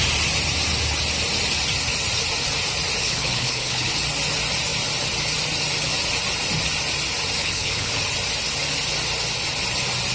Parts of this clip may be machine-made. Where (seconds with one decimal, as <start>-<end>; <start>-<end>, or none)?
3.0-3.9; 7.4-8.0